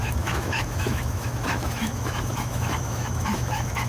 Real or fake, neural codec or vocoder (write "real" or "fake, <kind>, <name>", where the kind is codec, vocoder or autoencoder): fake, autoencoder, DAC-VAE